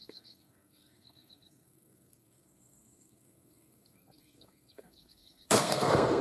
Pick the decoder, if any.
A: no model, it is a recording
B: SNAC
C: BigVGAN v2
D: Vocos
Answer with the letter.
B